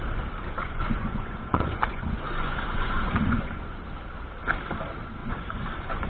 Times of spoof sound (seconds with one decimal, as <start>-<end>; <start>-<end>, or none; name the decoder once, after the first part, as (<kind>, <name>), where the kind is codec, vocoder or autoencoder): 0.6-3.8 (vocoder, Vocos); 5.2-6.1